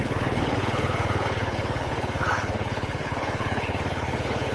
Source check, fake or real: fake